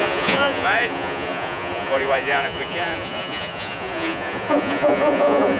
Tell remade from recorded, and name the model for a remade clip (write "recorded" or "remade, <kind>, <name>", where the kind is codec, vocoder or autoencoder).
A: remade, vocoder, Vocos